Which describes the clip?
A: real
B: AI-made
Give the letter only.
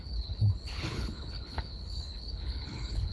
B